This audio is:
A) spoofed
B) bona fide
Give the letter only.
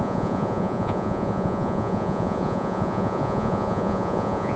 A